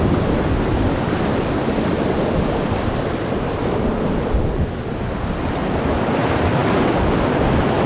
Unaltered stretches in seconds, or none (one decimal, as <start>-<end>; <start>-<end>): 0.0-7.9